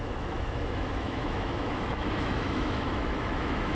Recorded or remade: remade